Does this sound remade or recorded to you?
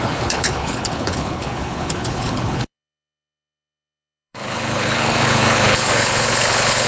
remade